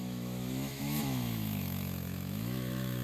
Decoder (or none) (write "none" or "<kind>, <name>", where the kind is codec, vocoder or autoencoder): autoencoder, DAC-VAE